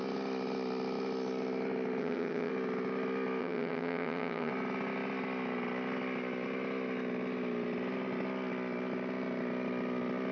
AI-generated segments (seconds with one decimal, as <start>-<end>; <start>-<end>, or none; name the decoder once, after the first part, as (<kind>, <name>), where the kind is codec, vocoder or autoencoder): 2.0-2.5 (vocoder, HiFi-GAN); 3.4-4.5